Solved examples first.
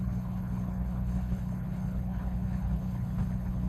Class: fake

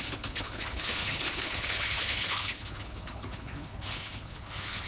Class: fake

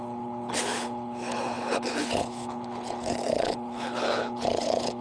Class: fake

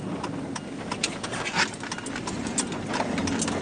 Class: real